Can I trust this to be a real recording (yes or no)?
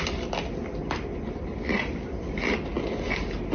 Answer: yes